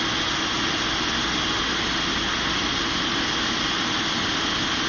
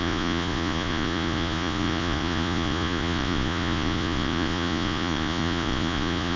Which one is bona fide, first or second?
first